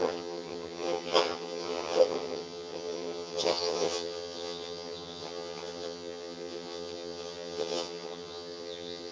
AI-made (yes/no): yes